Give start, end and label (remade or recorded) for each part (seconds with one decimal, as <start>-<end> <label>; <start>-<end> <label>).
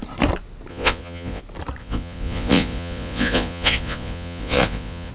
0.0-0.7 recorded; 0.7-1.4 remade; 1.4-1.8 recorded; 1.8-5.1 remade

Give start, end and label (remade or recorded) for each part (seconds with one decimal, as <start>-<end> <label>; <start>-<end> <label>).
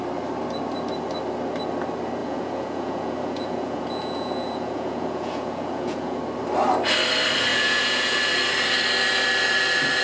0.0-2.2 recorded; 2.2-6.2 remade; 6.2-7.5 recorded; 7.5-8.2 remade; 8.2-10.0 recorded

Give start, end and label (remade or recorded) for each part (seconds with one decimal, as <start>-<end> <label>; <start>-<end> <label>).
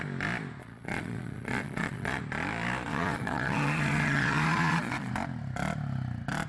0.0-0.6 recorded; 0.6-2.2 remade; 2.2-2.9 recorded; 2.9-5.1 remade; 5.1-6.5 recorded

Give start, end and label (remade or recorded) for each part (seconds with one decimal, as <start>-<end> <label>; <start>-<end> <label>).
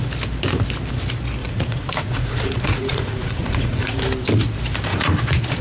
0.0-1.4 recorded; 1.4-4.0 remade; 4.0-4.9 recorded; 4.9-5.6 remade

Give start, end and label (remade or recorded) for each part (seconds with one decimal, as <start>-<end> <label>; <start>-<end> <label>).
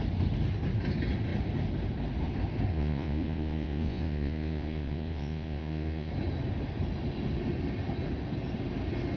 0.0-2.7 recorded; 2.7-6.1 remade; 6.1-9.2 recorded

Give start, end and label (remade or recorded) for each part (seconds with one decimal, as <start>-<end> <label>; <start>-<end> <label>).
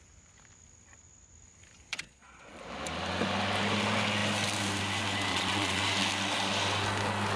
0.0-1.9 recorded; 1.9-2.6 remade; 2.6-5.3 recorded; 5.3-5.8 remade; 5.8-7.4 recorded